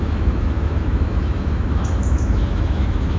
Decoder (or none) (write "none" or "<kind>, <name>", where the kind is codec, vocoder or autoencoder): autoencoder, DAC-VAE